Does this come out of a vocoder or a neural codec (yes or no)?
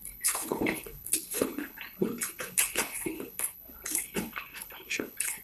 yes